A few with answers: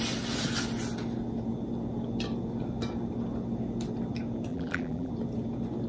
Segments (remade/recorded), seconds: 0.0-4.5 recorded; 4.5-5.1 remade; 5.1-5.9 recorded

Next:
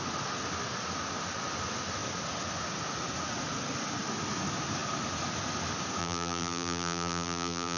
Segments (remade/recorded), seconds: 0.0-6.0 recorded; 6.0-7.8 remade

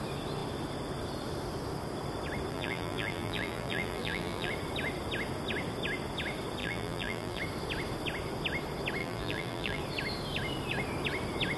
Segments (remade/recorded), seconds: 0.0-2.5 recorded; 2.5-4.5 remade; 4.5-6.6 recorded; 6.6-7.4 remade; 7.4-9.0 recorded; 9.0-9.8 remade; 9.8-11.6 recorded

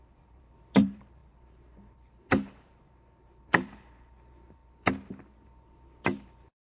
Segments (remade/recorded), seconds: 0.0-4.6 remade; 4.6-5.6 recorded; 5.6-6.6 remade

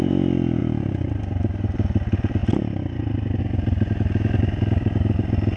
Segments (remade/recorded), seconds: 0.0-5.6 recorded

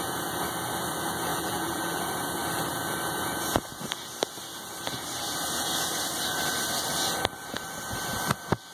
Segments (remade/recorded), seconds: 0.0-1.3 recorded; 1.3-2.0 remade; 2.0-8.7 recorded

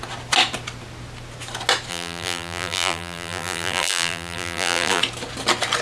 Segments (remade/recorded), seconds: 0.0-1.9 recorded; 1.9-5.0 remade; 5.0-5.8 recorded